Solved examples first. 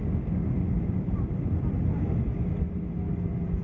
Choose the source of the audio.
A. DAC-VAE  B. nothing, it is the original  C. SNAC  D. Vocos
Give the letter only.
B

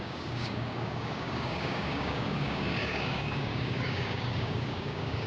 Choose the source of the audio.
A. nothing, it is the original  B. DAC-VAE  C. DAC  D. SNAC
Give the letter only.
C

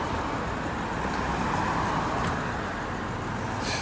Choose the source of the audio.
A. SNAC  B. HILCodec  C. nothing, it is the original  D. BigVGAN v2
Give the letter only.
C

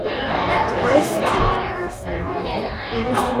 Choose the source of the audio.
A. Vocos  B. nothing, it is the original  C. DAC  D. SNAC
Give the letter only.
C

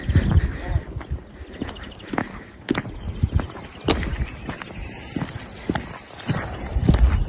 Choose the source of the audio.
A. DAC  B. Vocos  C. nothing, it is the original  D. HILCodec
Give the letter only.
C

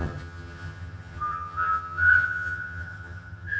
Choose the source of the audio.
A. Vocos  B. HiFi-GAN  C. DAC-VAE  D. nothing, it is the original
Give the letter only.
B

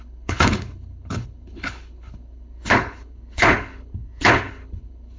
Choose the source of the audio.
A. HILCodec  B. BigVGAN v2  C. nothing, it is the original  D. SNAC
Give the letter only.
A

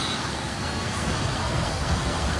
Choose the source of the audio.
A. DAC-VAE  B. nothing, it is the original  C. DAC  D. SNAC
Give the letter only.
D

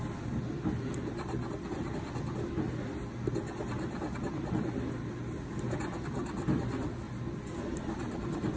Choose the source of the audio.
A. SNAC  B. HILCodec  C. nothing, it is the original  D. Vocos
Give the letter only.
C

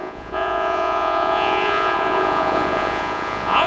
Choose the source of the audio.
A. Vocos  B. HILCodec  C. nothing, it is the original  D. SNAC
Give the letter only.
A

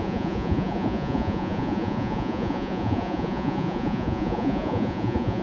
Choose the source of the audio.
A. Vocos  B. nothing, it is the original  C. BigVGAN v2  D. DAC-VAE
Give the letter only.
A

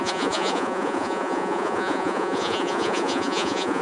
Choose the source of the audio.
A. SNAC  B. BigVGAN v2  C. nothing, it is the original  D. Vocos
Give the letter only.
D